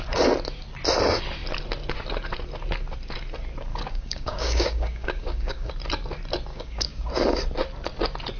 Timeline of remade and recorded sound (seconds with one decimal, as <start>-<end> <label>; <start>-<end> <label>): 0.0-3.7 recorded; 3.7-5.7 remade; 5.7-6.5 recorded; 6.5-7.1 remade; 7.1-8.4 recorded